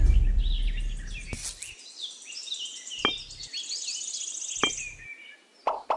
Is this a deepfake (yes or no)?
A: no